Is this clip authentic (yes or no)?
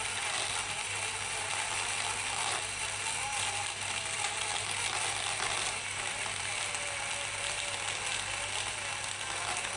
yes